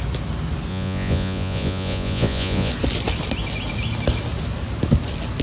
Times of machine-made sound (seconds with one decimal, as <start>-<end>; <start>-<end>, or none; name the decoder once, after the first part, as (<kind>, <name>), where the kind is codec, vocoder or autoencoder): 0.7-2.7 (vocoder, Vocos)